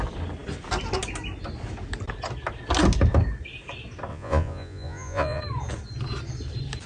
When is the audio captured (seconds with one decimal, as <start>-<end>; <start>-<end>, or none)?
0.0-4.1; 5.4-6.9